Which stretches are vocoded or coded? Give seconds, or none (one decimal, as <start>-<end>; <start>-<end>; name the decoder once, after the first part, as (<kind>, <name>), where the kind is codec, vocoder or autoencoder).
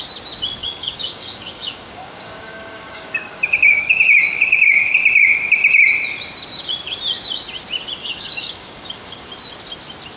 0.6-5.0 (codec, DAC); 8.0-9.3